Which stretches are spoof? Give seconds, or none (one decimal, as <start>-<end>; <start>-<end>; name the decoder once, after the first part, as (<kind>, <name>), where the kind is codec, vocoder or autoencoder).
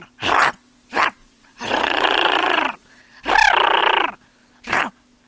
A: 1.2-3.3 (vocoder, Vocos)